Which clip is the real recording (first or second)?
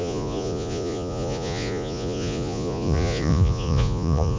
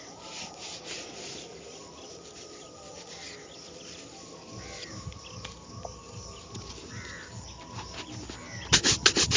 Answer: second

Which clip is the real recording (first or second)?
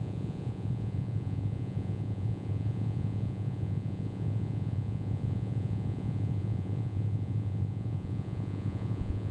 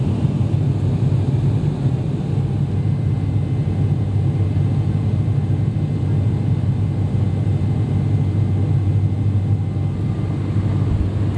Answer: second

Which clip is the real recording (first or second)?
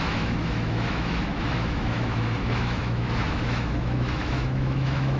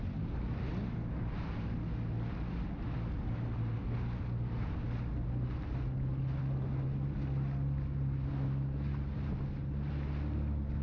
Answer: second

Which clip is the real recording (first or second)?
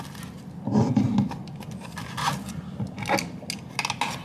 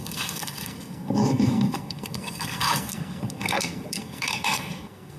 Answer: first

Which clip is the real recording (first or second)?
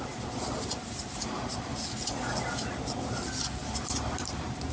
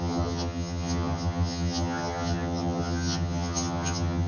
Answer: first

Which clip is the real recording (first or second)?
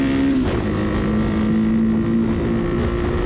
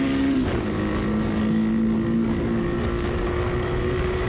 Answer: first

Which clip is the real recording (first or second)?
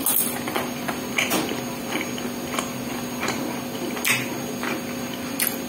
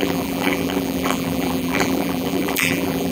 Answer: first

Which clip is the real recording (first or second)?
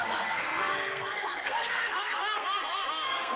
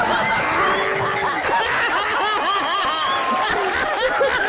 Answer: second